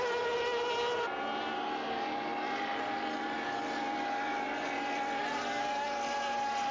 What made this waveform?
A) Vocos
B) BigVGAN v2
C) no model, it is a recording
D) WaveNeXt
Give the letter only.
C